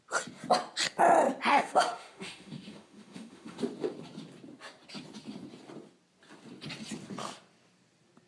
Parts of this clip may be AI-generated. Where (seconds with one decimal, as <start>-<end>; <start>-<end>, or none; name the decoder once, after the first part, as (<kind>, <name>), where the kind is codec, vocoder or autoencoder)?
1.5-3.6 (autoencoder, DAC-VAE)